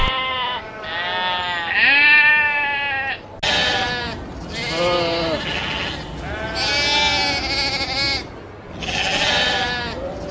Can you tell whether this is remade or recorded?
recorded